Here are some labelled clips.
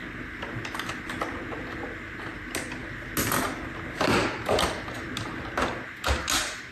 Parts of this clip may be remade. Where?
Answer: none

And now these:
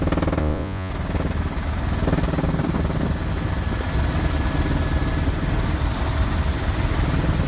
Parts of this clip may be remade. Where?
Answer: 0.4-0.9 (vocoder, Vocos)

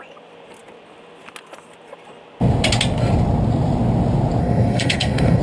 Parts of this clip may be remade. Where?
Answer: 4.4-5.4 (codec, SNAC)